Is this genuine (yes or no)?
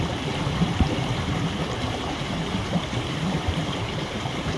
no